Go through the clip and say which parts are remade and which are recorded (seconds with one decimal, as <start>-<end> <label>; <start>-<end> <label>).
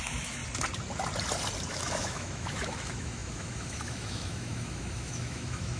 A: 0.0-0.4 remade; 0.4-1.7 recorded; 1.7-5.8 remade